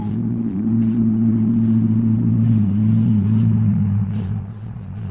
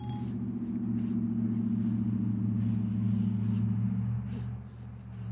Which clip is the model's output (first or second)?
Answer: first